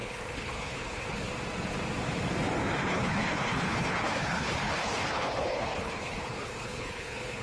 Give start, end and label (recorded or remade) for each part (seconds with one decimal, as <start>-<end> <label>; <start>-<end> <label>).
0.0-1.3 remade; 1.3-2.8 recorded; 2.8-7.4 remade